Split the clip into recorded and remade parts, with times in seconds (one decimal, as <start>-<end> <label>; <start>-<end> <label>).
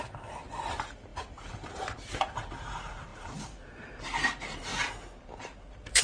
0.0-4.7 remade; 4.7-5.4 recorded; 5.4-6.0 remade